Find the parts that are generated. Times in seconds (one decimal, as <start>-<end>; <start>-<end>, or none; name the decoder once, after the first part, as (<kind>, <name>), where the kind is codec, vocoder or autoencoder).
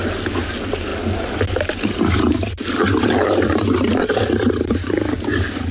0.9-4.3 (vocoder, BigVGAN v2)